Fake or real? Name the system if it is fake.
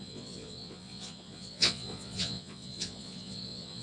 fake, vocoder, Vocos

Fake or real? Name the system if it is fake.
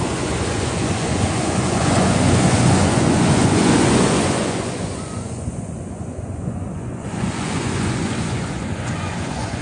fake, vocoder, Vocos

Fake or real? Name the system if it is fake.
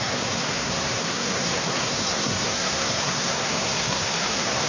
fake, codec, SNAC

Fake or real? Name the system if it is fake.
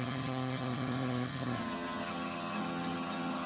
fake, vocoder, HiFi-GAN